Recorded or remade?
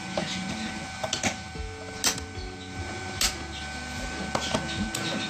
recorded